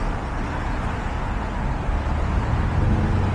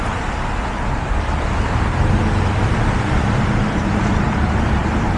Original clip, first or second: first